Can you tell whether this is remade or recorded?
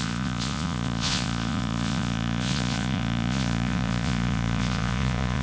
remade